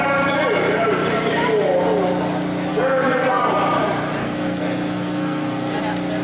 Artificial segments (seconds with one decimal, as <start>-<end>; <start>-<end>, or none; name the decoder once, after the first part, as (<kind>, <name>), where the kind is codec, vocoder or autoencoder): 2.7-3.4 (codec, SNAC); 4.2-5.8